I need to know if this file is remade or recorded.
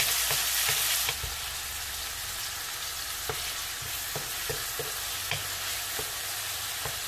recorded